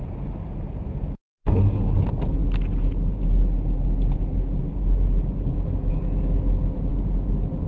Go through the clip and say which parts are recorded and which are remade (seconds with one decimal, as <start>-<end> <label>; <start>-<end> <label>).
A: 0.0-7.7 recorded